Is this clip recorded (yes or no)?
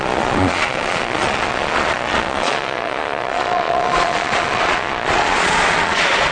no